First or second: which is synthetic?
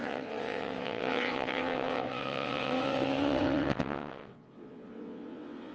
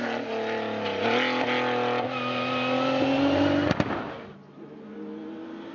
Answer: first